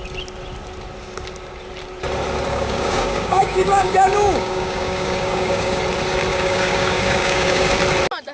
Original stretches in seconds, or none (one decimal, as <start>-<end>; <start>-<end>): 0.0-2.5; 5.8-6.3; 7.8-8.3